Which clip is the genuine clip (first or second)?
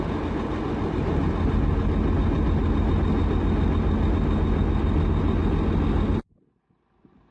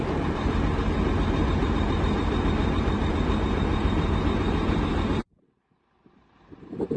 first